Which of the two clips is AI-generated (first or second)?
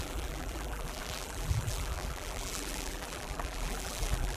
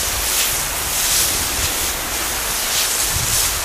first